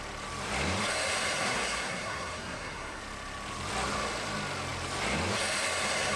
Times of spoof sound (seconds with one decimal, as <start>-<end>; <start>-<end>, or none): 1.4-3.0